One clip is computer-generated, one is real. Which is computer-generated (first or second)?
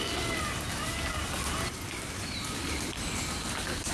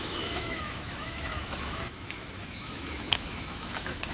second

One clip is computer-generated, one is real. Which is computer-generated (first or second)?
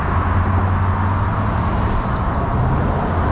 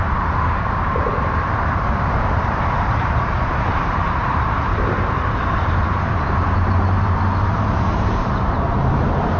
second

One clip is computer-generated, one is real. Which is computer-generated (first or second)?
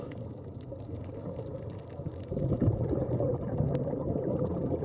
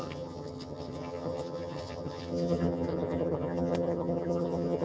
second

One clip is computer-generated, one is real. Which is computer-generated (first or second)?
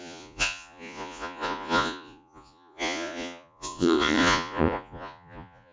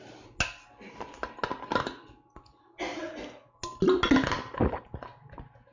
first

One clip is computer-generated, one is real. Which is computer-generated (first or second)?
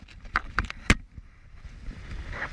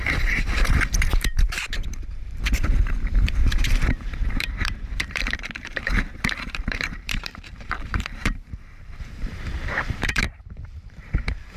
second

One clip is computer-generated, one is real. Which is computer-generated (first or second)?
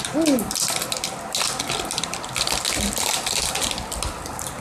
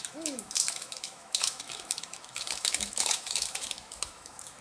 second